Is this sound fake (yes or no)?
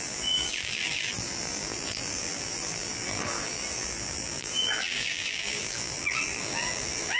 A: yes